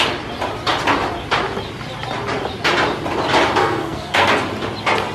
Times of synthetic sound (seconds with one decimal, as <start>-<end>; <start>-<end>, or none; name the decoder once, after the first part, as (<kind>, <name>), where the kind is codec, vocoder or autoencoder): 3.6-4.3 (codec, SNAC)